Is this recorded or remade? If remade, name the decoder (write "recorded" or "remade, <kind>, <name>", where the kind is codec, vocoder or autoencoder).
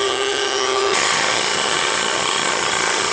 remade, vocoder, HiFi-GAN